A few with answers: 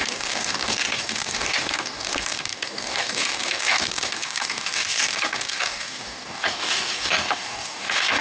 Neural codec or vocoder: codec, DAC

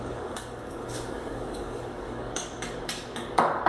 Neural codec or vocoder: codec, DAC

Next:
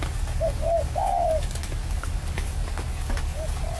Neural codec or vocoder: codec, DAC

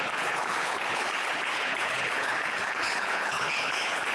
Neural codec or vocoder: codec, HILCodec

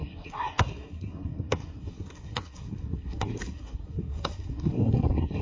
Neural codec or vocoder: codec, SNAC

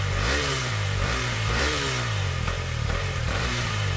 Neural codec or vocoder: vocoder, BigVGAN v2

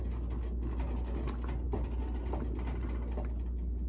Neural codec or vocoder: none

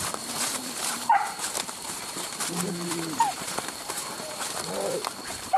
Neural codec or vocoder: vocoder, BigVGAN v2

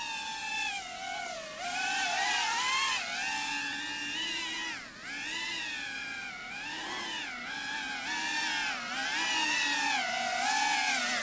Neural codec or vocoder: none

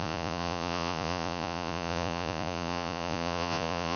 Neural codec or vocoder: vocoder, Vocos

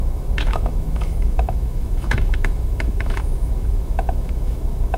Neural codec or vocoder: autoencoder, DAC-VAE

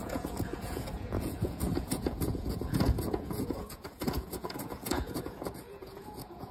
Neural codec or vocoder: vocoder, Vocos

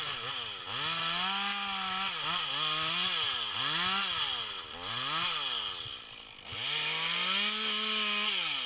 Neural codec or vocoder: none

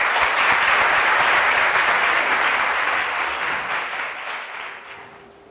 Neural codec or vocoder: none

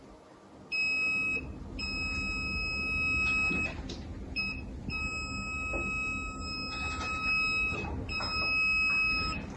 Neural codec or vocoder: none